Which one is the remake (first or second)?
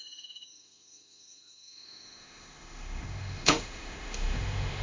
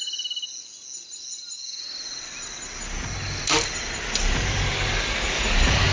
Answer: first